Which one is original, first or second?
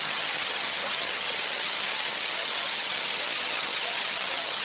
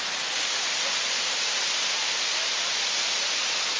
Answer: second